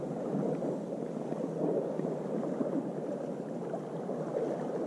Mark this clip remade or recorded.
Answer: recorded